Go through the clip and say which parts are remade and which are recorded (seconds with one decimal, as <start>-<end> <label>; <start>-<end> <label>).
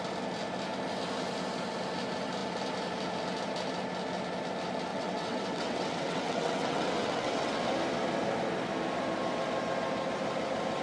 0.0-4.9 recorded; 4.9-7.6 remade; 7.6-10.8 recorded